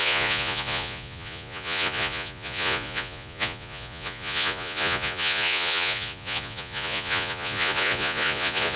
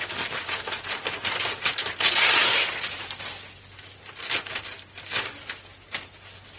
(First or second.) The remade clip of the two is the first